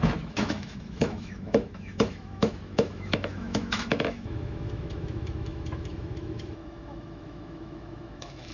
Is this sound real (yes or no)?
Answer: no